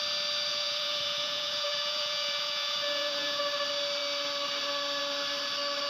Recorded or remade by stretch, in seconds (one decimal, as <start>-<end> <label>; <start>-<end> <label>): 0.0-0.5 recorded; 0.5-3.4 remade; 3.4-5.9 recorded